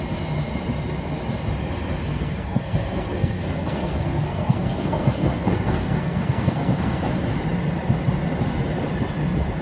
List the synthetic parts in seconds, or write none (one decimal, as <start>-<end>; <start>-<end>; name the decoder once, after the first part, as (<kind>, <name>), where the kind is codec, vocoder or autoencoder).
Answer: 2.0-7.1 (codec, SNAC)